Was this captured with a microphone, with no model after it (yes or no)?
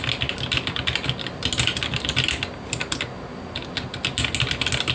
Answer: yes